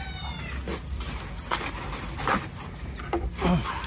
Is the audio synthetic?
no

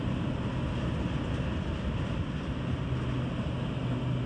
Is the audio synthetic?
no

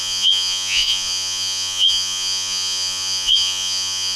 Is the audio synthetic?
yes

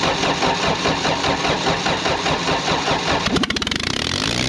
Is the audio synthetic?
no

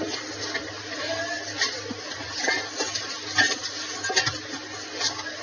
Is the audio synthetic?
no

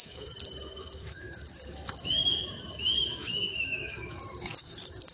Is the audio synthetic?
yes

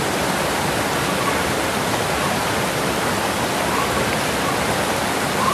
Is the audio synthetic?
no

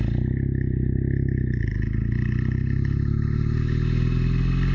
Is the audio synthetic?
no